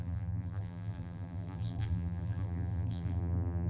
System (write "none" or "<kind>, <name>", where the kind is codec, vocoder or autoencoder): vocoder, BigVGAN v2